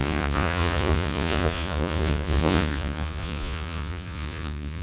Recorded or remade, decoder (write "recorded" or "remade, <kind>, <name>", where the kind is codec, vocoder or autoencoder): remade, vocoder, Vocos